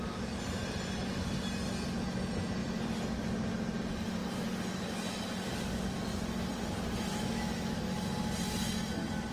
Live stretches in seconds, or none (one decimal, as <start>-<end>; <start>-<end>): 0.0-7.1; 7.8-9.3